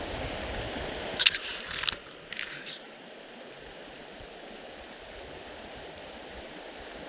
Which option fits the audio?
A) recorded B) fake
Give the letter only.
A